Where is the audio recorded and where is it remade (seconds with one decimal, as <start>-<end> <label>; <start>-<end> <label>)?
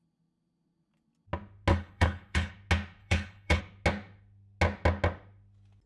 0.0-1.7 recorded; 1.7-2.5 remade; 2.5-3.0 recorded; 3.0-3.6 remade; 3.6-5.9 recorded